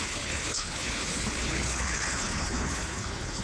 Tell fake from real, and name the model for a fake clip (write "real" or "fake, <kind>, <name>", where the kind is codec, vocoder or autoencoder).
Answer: fake, codec, HILCodec